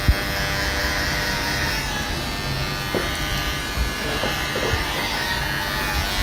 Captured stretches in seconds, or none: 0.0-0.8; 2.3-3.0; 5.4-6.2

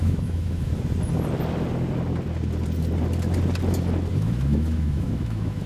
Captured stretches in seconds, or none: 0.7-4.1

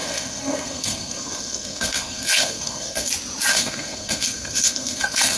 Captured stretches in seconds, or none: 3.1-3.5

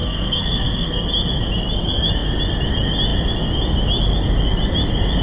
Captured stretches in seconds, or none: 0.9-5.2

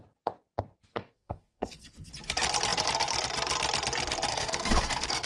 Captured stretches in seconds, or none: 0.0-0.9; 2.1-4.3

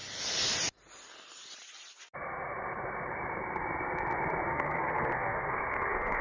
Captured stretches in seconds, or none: 0.0-4.5

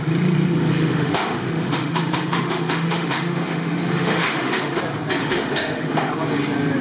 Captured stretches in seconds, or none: 0.0-0.7; 4.8-5.2; 6.1-6.8

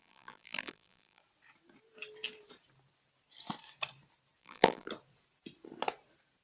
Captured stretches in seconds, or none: 1.2-4.4; 4.9-6.4